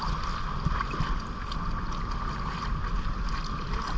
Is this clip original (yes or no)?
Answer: yes